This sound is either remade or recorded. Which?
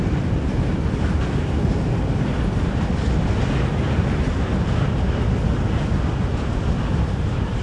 recorded